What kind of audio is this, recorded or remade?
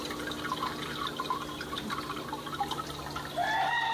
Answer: recorded